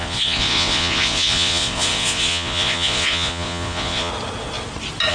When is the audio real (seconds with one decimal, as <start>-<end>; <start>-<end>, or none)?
4.1-5.1